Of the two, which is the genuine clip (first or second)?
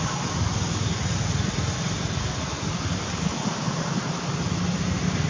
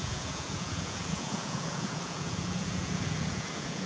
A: first